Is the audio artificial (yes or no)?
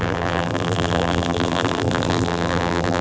yes